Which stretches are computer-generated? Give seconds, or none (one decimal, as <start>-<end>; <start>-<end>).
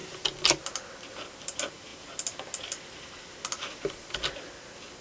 none